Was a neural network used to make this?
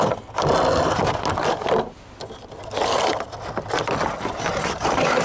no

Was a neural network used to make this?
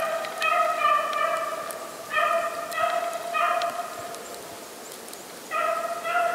no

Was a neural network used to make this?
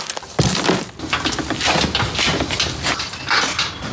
no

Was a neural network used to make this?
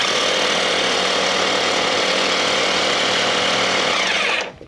yes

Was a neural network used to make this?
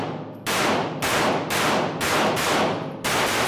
no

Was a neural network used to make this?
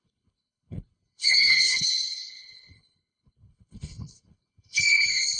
yes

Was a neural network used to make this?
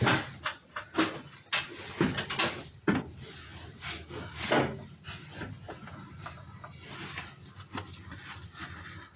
no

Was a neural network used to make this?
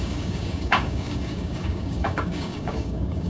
yes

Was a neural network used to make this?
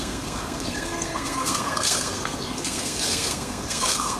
yes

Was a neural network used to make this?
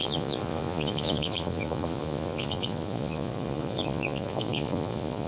yes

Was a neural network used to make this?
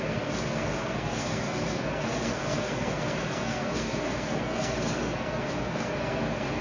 yes